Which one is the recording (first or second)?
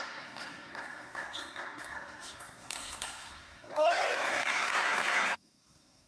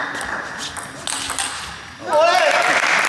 second